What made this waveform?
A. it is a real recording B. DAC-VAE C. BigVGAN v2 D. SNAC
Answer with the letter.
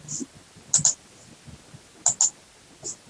A